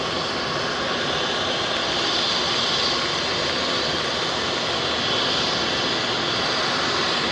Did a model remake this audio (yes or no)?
no